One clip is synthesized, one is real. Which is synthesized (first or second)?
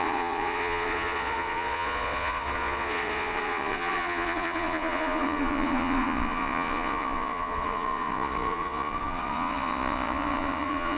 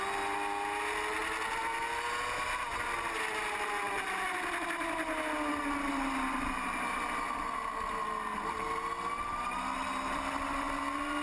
first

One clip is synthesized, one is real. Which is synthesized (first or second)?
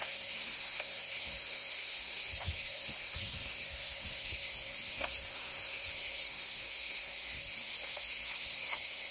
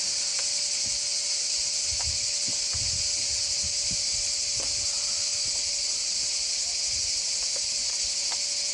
first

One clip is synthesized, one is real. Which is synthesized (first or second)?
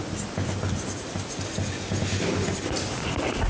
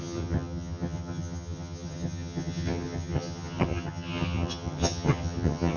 second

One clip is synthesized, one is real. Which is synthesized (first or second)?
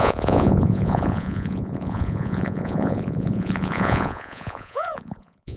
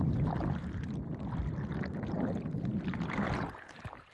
first